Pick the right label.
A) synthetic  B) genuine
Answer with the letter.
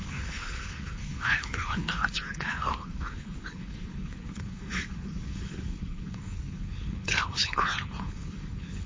A